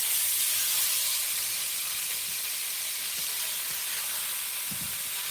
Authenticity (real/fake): real